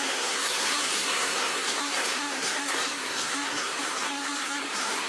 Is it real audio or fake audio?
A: fake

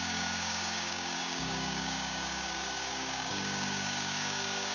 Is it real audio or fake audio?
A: fake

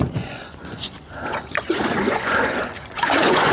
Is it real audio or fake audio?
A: fake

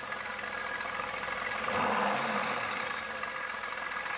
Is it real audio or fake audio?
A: real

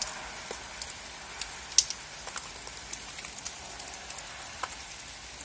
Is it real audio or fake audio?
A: real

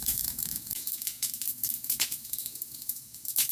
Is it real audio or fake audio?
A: fake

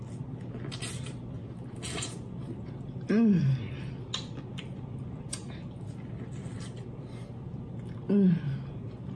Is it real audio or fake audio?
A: real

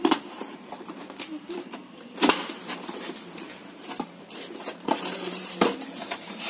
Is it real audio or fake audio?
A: fake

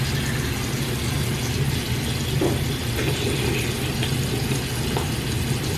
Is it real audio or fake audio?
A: real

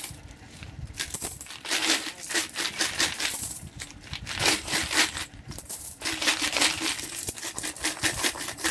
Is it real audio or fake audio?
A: fake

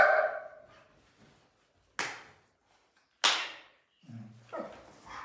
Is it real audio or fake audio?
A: real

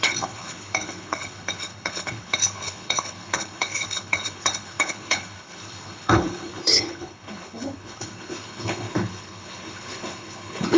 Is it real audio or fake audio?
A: fake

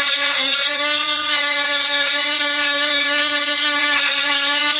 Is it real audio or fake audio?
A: fake